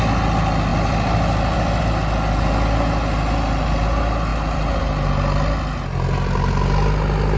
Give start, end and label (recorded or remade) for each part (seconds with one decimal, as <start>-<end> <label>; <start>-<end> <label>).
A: 0.0-0.7 recorded; 0.7-1.8 remade; 1.8-4.3 recorded; 4.3-4.8 remade; 4.8-7.4 recorded